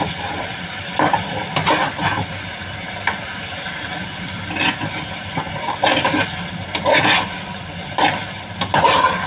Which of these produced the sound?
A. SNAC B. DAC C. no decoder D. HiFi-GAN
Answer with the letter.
C